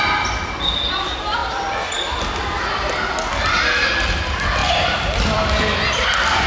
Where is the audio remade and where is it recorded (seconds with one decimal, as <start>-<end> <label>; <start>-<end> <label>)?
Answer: 0.0-1.4 recorded; 1.4-2.2 remade; 2.2-4.6 recorded; 4.6-6.5 remade